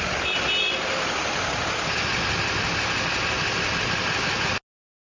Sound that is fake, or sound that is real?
real